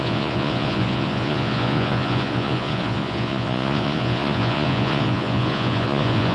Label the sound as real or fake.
fake